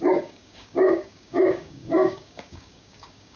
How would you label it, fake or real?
fake